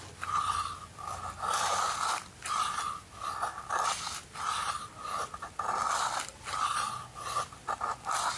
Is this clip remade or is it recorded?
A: recorded